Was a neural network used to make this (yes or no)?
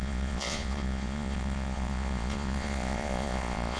yes